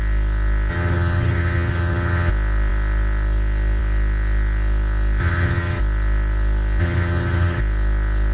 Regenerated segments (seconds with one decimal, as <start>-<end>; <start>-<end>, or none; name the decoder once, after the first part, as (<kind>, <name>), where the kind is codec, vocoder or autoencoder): 0.7-2.3 (vocoder, HiFi-GAN); 5.2-5.8; 6.8-7.6

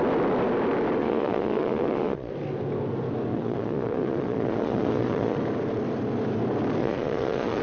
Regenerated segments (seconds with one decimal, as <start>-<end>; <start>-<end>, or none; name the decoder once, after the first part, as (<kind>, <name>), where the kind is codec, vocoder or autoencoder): 1.0-2.3 (vocoder, Vocos); 3.3-5.4; 6.8-7.6